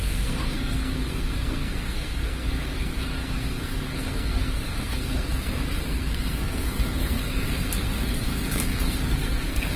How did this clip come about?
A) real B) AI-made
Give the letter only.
B